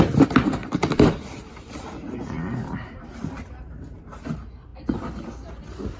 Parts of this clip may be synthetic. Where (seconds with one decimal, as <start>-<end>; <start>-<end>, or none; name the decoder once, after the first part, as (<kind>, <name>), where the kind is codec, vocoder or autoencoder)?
0.6-4.2 (vocoder, BigVGAN v2)